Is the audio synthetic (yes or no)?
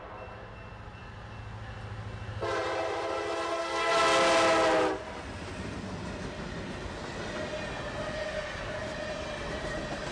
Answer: no